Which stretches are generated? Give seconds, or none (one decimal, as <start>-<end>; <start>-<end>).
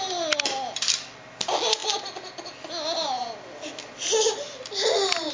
none